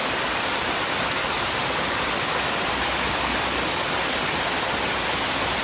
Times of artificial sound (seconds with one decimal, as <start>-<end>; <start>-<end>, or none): 1.6-4.3